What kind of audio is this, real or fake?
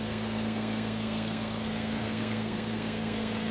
fake